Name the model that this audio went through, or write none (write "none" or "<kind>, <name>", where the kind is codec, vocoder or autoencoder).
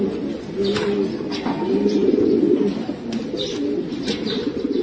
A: none